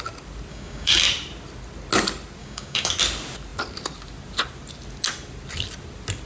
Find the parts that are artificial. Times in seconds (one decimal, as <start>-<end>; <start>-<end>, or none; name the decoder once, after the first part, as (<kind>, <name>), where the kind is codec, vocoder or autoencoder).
0.5-1.0 (codec, DAC); 2.4-2.9